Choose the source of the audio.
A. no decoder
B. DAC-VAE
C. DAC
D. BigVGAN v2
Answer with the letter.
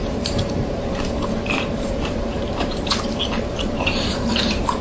D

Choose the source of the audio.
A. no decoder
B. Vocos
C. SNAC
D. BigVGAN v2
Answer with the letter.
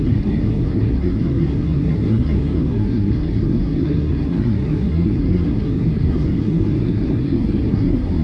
C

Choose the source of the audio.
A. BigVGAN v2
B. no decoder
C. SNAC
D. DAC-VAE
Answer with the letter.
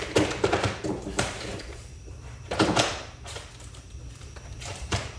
A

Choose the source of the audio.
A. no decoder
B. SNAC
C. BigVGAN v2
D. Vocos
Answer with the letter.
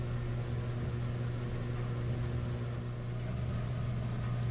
A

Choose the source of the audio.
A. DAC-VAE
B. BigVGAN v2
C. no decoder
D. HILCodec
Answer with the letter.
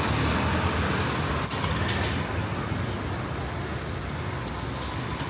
C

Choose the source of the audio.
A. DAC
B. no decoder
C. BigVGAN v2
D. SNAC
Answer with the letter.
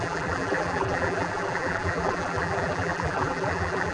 C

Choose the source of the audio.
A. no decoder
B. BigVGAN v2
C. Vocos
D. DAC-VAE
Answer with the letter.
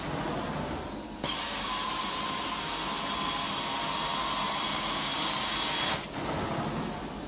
A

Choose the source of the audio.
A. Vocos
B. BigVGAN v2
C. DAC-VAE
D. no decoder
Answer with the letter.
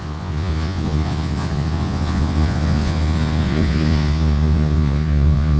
A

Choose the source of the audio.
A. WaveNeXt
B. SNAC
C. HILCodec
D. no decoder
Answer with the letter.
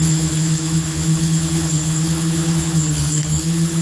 C